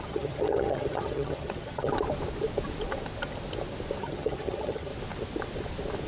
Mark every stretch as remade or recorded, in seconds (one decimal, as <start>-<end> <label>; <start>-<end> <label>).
0.0-1.9 remade; 1.9-4.0 recorded; 4.0-4.9 remade; 4.9-6.1 recorded